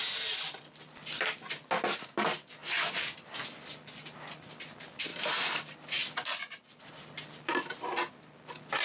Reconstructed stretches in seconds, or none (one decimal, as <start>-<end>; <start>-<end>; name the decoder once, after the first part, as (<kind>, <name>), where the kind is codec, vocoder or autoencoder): none